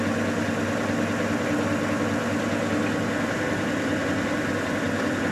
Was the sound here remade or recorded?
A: recorded